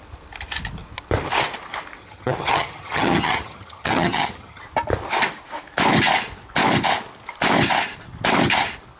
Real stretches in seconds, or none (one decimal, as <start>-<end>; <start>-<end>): 0.0-2.0; 4.6-9.0